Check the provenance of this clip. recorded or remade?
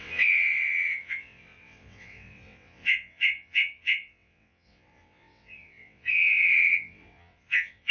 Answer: remade